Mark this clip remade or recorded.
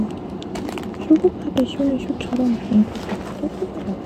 recorded